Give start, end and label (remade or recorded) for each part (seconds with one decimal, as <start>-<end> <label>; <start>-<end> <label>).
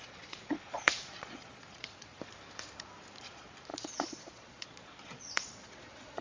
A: 0.0-2.1 remade; 2.1-3.2 recorded; 3.2-6.2 remade